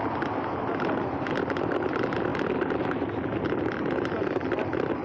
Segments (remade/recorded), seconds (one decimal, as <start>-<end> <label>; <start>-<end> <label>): 0.0-5.0 recorded